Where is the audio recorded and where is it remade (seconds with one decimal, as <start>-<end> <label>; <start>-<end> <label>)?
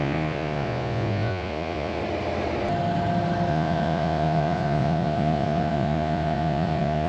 0.0-2.0 remade; 2.0-3.5 recorded; 3.5-7.1 remade